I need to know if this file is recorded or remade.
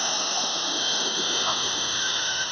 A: remade